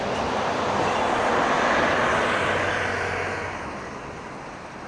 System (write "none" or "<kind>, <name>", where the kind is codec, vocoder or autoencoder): none